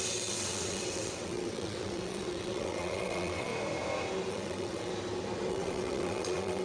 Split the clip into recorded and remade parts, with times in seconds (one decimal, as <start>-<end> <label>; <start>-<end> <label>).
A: 0.0-3.5 remade; 3.5-4.3 recorded; 4.3-4.9 remade; 4.9-5.5 recorded; 5.5-6.6 remade